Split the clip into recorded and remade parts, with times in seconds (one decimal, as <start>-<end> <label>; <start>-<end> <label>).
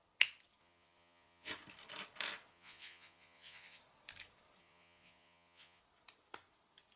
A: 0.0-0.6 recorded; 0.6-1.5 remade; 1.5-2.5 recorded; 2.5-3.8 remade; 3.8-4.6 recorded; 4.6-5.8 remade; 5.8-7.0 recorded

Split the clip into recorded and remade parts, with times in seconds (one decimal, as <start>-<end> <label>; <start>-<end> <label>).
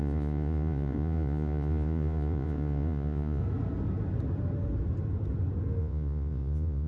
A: 0.0-3.4 remade; 3.4-5.8 recorded; 5.8-6.9 remade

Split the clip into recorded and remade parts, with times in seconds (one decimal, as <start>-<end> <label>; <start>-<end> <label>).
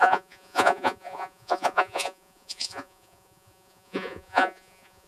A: 0.0-5.1 remade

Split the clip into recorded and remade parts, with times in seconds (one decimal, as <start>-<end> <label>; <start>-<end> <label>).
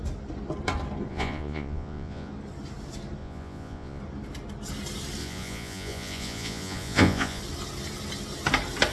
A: 0.0-1.1 recorded; 1.1-2.3 remade; 2.3-3.2 recorded; 3.2-4.0 remade; 4.0-5.2 recorded; 5.2-7.4 remade; 7.4-8.9 recorded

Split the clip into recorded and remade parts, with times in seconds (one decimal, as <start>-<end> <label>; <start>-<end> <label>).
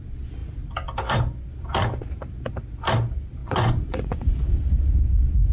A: 0.0-3.4 recorded; 3.4-4.4 remade; 4.4-5.5 recorded